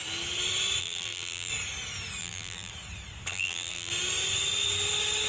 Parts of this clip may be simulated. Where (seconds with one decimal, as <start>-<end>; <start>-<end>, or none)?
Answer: 0.8-1.5; 2.2-2.7; 3.3-3.9